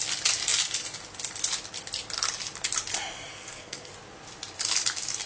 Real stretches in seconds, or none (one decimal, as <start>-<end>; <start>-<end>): 0.0-3.3; 3.9-5.3